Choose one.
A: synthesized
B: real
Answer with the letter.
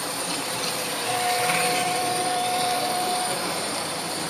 A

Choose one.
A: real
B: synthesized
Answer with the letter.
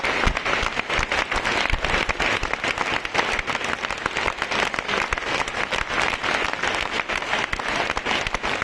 A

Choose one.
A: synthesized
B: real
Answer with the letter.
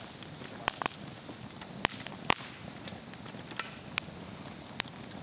B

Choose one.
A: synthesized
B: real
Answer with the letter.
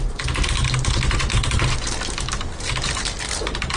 B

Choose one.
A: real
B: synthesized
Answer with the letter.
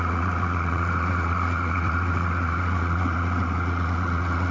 B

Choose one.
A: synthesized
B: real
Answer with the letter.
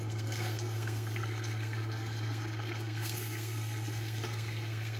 A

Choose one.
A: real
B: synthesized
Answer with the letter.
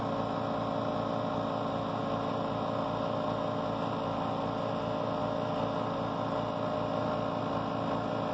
A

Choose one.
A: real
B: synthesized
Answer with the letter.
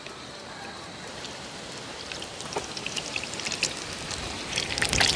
A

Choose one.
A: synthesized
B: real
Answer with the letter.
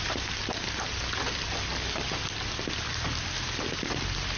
B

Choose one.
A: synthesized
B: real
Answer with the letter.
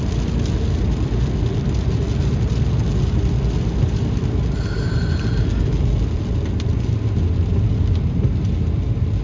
B